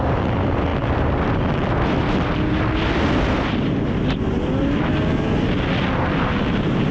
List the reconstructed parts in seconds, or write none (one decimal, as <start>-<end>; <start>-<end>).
none